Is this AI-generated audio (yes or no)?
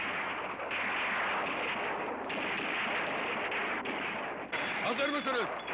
no